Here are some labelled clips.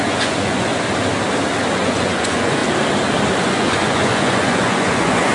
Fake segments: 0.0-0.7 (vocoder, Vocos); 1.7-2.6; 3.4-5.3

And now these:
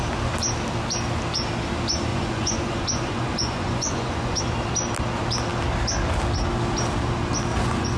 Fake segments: 2.1-4.4 (vocoder, Vocos); 7.5-8.0

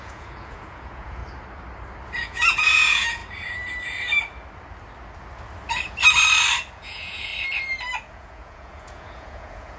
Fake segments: 0.0-1.2 (vocoder, Vocos); 2.2-3.2; 6.7-7.3; 8.1-9.8